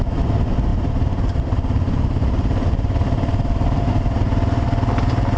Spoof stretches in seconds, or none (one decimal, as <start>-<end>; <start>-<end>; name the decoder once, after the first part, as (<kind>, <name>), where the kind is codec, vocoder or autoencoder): 0.7-3.9 (vocoder, BigVGAN v2)